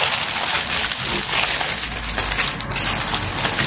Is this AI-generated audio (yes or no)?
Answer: no